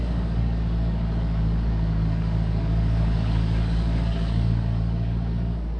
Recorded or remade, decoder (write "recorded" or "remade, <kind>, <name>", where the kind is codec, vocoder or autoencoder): remade, codec, DAC